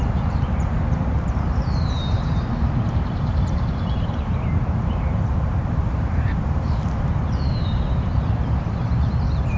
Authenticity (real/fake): fake